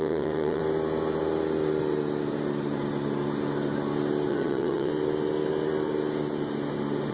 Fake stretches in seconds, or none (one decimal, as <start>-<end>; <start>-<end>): 0.0-0.6; 4.3-4.9